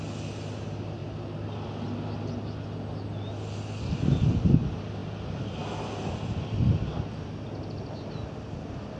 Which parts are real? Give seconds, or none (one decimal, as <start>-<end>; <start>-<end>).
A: 0.0-9.0